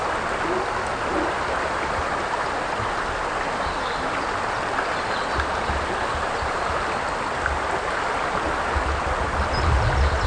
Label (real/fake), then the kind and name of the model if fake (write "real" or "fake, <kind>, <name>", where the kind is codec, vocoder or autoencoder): real